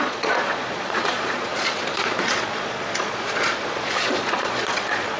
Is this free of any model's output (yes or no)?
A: no